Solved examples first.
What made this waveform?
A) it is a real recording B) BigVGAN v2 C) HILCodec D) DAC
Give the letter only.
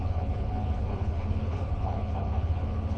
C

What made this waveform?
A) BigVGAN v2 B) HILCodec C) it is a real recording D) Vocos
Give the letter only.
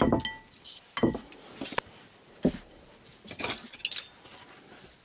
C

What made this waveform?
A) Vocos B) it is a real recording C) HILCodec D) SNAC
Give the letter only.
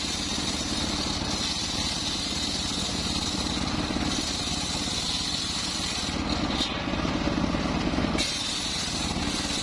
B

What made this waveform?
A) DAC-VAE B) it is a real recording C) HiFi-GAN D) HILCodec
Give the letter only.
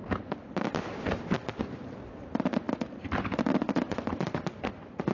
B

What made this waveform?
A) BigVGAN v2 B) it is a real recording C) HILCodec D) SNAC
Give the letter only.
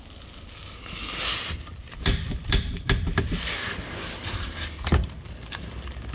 B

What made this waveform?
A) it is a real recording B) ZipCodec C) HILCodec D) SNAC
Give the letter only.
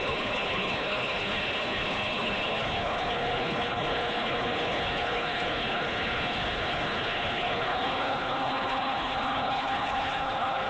C